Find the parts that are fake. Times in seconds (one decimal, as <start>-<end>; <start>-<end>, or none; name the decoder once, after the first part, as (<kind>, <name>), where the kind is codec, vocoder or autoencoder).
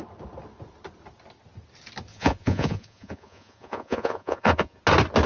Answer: 2.1-4.8 (vocoder, Vocos)